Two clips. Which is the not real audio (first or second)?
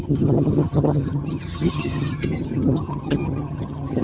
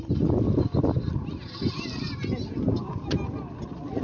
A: first